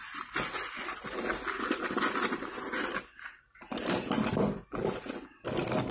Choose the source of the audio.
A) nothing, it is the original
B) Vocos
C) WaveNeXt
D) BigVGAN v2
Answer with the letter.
A